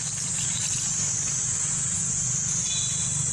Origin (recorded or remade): recorded